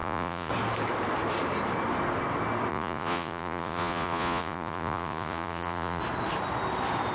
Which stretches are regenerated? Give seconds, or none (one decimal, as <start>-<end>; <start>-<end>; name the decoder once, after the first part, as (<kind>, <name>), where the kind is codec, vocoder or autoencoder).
0.0-0.5 (vocoder, Vocos); 2.7-6.0